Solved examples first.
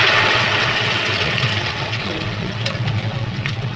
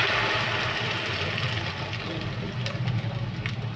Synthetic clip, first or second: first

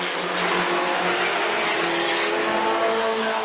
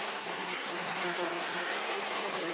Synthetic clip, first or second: second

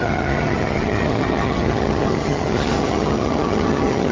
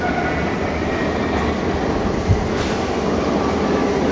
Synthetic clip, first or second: first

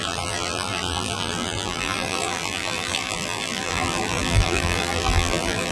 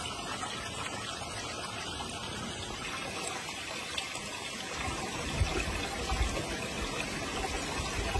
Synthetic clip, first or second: first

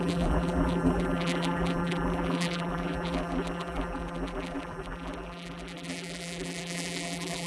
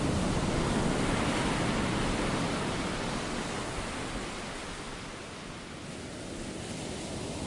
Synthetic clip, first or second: first